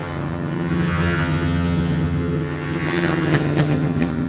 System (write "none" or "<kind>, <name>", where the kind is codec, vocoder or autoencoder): vocoder, HiFi-GAN